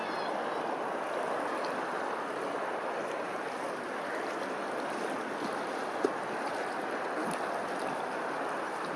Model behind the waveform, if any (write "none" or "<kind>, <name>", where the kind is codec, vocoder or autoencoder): none